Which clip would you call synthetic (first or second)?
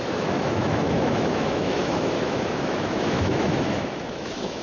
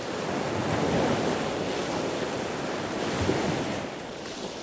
first